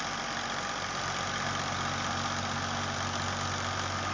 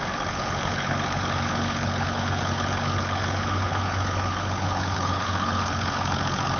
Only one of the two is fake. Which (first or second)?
second